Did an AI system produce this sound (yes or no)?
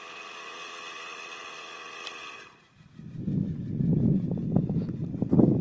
no